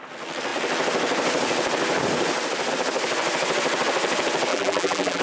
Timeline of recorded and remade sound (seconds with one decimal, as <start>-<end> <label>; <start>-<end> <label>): 0.0-4.5 recorded; 4.5-5.2 remade